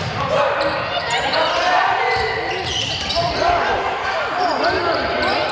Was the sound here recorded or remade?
remade